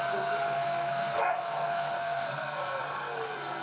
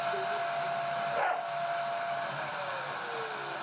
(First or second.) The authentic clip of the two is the second